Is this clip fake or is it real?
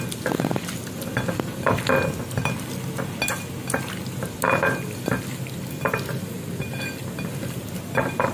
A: real